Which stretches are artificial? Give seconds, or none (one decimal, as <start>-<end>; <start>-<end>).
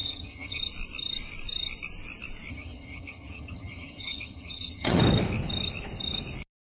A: 0.0-0.6; 2.5-5.0